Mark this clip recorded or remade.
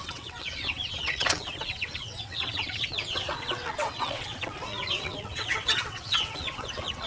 remade